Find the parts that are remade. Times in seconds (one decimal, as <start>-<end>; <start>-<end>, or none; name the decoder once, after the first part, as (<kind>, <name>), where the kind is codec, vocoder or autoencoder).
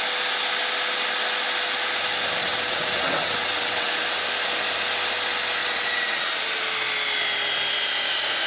2.4-3.9 (vocoder, WaveNeXt); 5.6-6.6